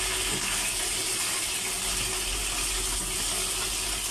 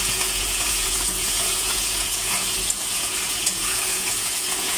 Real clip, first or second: first